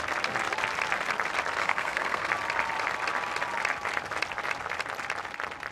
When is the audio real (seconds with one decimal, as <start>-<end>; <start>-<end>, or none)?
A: 0.0-1.6; 2.3-5.7